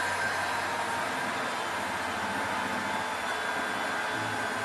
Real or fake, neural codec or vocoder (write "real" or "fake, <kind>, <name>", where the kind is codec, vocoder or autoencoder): real